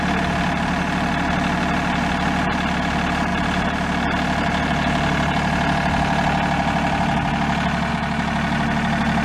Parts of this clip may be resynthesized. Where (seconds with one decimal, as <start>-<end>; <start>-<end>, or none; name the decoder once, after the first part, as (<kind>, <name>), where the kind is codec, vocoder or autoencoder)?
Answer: none